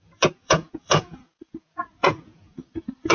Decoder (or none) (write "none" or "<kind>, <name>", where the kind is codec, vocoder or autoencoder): vocoder, Vocos